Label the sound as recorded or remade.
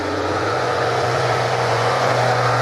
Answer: remade